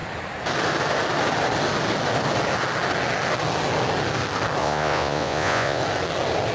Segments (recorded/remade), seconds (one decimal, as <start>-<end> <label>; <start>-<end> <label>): 0.0-4.6 recorded; 4.6-5.8 remade; 5.8-6.5 recorded

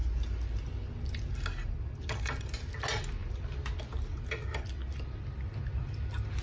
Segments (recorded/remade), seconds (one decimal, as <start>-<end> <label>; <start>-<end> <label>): 0.0-6.4 recorded

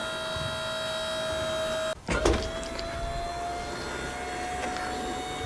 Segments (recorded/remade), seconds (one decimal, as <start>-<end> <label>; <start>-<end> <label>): 0.0-5.5 recorded